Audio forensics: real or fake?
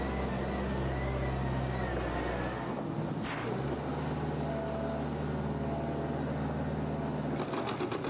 real